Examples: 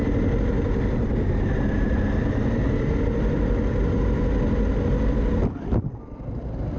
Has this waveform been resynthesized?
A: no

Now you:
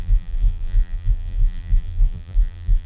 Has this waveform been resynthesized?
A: yes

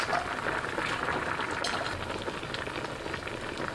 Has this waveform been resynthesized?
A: no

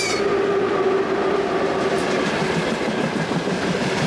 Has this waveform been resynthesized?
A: no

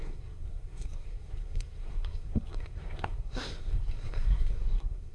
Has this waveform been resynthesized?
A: yes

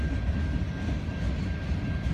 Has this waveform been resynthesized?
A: no